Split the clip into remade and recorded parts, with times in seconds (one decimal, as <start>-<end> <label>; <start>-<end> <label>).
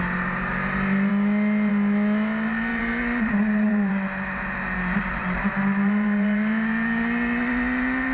0.0-2.7 recorded; 2.7-3.9 remade; 3.9-5.2 recorded; 5.2-6.7 remade; 6.7-8.1 recorded